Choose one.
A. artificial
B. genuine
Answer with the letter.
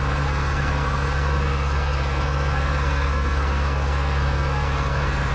A